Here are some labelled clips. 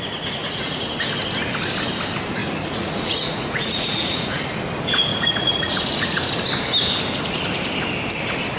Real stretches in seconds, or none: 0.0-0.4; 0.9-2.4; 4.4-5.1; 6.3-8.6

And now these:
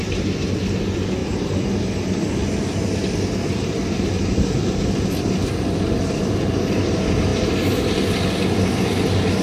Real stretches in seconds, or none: 0.0-1.2; 1.7-9.4